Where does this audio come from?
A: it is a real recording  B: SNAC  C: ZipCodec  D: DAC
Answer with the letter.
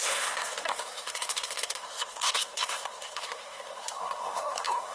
B